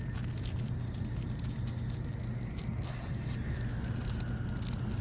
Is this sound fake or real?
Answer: real